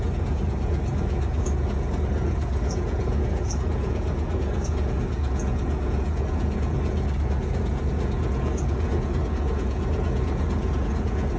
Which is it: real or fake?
fake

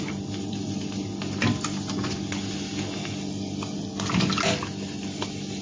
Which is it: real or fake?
real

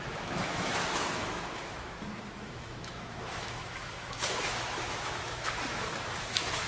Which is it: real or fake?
fake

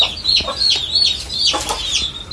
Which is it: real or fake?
real